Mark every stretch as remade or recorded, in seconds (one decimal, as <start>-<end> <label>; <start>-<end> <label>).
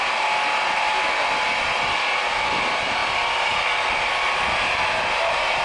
0.0-5.6 recorded